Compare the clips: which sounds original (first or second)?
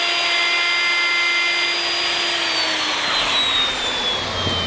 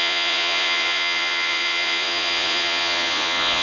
first